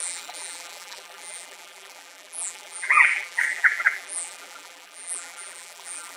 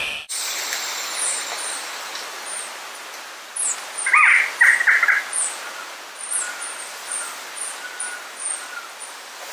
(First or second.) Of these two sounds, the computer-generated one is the first